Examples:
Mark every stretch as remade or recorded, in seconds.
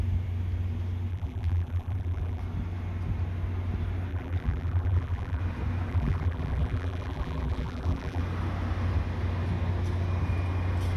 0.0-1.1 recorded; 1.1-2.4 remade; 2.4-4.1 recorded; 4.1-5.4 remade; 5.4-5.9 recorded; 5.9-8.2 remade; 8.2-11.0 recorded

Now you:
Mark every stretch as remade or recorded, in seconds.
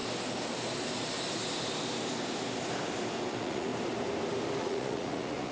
0.0-3.3 recorded; 3.3-3.7 remade; 3.7-4.6 recorded; 4.6-5.5 remade